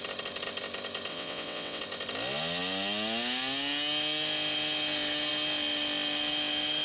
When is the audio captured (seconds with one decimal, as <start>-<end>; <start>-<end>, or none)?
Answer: 0.0-1.1; 1.8-6.8